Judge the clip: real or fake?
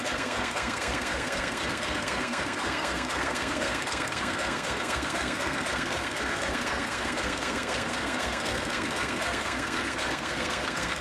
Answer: fake